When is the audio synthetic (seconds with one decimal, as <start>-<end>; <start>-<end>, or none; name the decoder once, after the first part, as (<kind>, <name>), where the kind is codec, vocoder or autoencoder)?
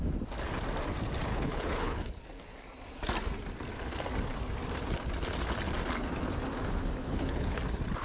1.3-2.2 (codec, HILCodec); 7.0-7.6